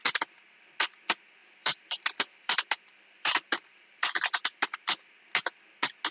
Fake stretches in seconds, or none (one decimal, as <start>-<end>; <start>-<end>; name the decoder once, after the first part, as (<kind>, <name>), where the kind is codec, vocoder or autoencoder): 1.4-5.1 (vocoder, BigVGAN v2)